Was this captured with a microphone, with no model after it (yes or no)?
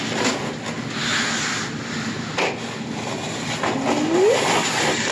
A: yes